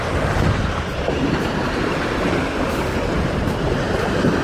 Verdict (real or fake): fake